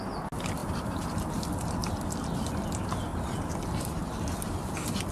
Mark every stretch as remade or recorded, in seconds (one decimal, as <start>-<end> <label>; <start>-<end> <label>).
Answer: 0.0-1.8 recorded; 1.8-2.5 remade; 2.5-3.1 recorded; 3.1-4.6 remade; 4.6-5.1 recorded